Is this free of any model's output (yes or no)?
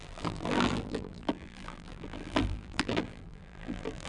no